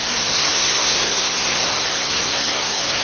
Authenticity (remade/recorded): remade